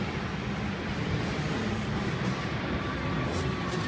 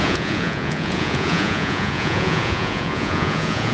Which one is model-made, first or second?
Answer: second